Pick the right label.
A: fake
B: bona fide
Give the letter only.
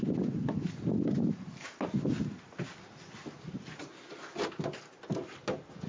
B